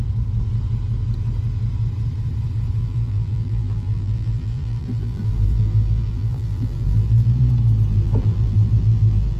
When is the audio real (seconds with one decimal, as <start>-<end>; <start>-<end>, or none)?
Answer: 0.0-2.8; 7.5-7.9

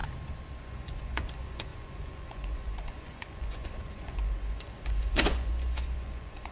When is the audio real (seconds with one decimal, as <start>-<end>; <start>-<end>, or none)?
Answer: 0.0-0.6

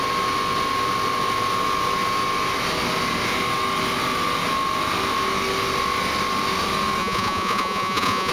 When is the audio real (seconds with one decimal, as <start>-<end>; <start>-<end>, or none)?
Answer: 0.0-7.0

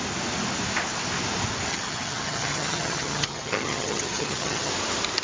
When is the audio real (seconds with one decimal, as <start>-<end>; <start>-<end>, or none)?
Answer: 0.0-1.7; 4.7-5.2

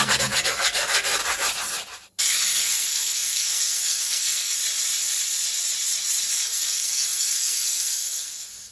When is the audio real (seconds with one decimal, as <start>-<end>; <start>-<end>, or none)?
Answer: 1.2-2.2; 4.6-6.3

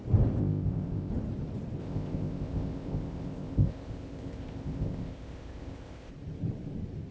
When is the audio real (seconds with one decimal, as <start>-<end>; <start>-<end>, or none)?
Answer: 0.0-0.4; 1.1-1.8; 6.1-7.1

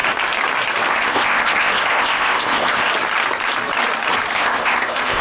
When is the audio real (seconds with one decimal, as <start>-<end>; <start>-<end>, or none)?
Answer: 0.0-0.9; 2.9-4.3

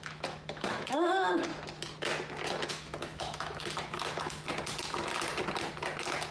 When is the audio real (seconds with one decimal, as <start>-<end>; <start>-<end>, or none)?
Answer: 1.5-2.7; 4.4-6.3